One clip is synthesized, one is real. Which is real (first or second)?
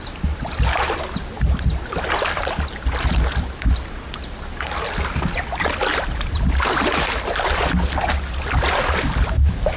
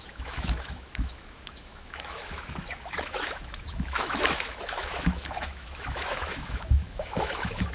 first